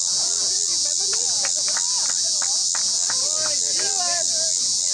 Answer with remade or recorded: recorded